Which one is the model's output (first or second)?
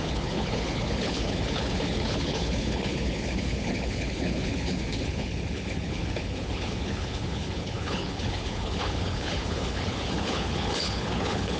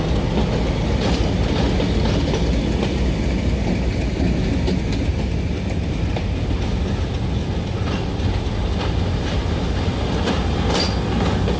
first